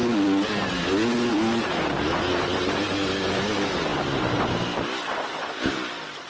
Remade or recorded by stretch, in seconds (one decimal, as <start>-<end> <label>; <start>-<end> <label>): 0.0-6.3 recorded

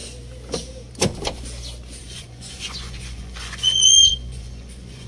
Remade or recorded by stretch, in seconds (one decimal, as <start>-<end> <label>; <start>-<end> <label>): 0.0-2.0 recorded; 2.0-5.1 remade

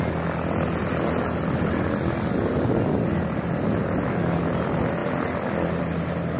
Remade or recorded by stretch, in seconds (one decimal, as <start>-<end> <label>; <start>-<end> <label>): 0.0-6.4 recorded

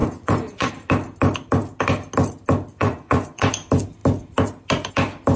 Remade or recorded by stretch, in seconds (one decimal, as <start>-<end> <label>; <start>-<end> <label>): 0.0-0.7 remade; 0.7-2.7 recorded; 2.7-3.5 remade; 3.5-5.4 recorded

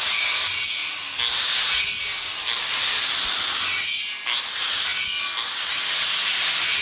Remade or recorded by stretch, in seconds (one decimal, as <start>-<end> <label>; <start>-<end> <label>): 0.0-6.8 recorded